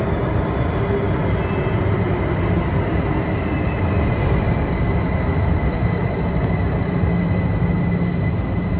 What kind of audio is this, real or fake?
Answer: real